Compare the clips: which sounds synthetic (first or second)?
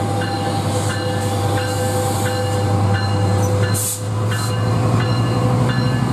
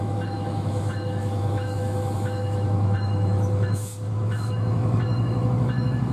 second